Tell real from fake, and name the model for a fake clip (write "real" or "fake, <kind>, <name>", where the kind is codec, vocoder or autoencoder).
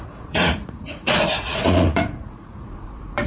fake, vocoder, Vocos